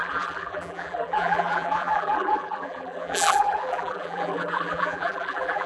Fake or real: fake